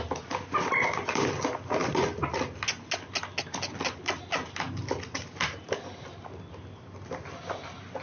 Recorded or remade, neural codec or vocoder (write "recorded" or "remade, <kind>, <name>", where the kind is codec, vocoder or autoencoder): recorded